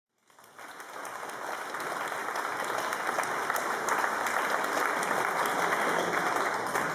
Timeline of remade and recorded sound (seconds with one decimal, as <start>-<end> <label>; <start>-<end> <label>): 0.0-6.9 recorded